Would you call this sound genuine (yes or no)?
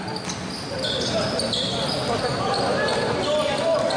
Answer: yes